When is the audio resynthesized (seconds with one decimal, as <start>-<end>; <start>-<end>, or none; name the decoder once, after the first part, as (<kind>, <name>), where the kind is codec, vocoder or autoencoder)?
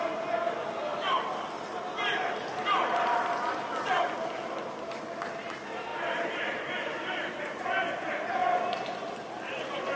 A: 0.9-3.0 (vocoder, BigVGAN v2); 5.9-7.4